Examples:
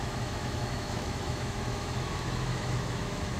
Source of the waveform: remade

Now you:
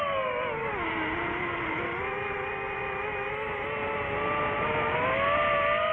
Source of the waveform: recorded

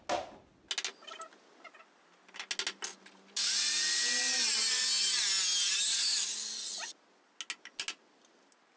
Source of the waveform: recorded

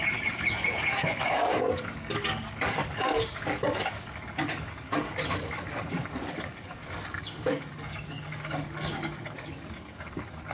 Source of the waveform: remade